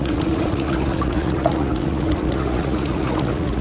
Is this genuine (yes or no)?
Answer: no